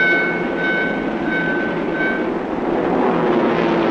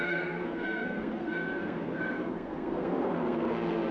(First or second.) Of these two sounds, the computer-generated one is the second